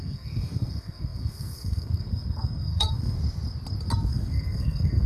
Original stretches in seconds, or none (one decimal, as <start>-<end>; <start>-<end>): 3.2-4.1